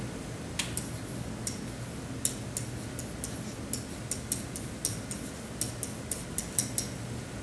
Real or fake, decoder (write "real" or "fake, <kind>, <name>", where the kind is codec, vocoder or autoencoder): real